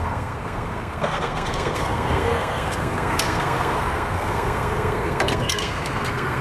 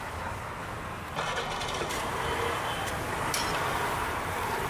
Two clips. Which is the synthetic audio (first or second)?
first